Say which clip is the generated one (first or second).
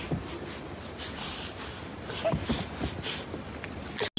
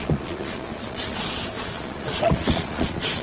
second